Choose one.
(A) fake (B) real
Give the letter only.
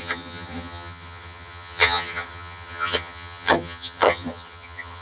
A